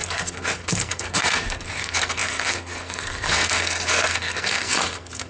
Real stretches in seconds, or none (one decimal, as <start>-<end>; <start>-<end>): none